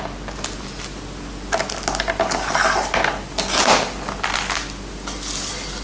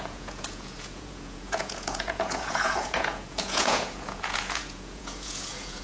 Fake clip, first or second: second